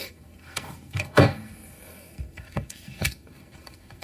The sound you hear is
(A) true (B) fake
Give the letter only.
B